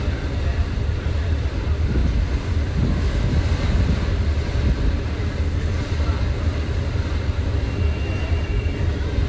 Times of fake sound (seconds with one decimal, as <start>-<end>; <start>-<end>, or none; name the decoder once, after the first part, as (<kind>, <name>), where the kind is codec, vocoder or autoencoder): 0.0-2.0 (vocoder, BigVGAN v2); 3.3-9.3